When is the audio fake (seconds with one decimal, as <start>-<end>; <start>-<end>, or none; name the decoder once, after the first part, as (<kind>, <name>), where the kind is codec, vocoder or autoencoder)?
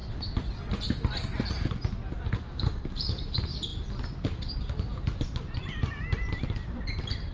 2.1-3.7 (vocoder, BigVGAN v2); 5.6-7.3